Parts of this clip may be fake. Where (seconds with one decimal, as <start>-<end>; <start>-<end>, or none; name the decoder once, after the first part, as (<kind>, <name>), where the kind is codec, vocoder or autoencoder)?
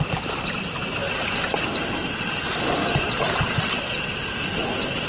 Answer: none